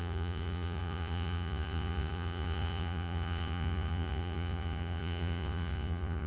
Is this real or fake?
fake